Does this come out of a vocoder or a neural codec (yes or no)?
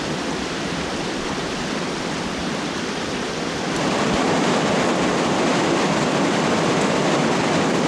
yes